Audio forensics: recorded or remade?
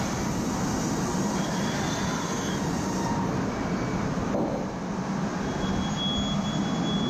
recorded